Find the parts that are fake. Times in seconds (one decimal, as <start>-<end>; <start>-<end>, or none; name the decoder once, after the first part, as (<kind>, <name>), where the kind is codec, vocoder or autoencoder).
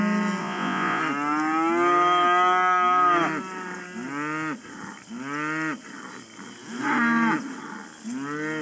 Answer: 0.4-1.0 (vocoder, Vocos)